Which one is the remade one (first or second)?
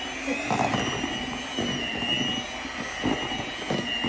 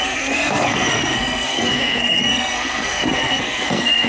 second